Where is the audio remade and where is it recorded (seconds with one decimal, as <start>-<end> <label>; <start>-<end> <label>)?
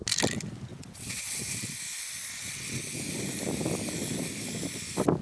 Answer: 0.0-0.7 recorded; 0.7-1.8 remade; 1.8-2.3 recorded; 2.3-2.8 remade; 2.8-5.2 recorded